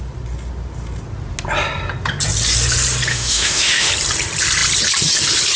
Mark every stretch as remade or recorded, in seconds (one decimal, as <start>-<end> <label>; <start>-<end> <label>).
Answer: 0.0-3.1 recorded; 3.1-3.9 remade; 3.9-5.6 recorded